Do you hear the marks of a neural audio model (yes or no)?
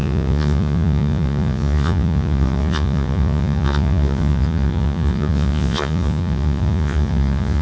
yes